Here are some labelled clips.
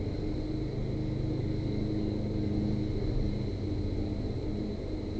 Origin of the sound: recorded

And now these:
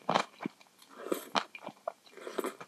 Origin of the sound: recorded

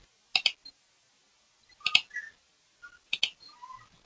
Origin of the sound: recorded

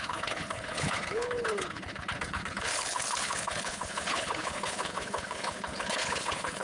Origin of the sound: remade